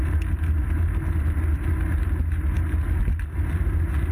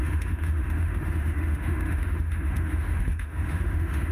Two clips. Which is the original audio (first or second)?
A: first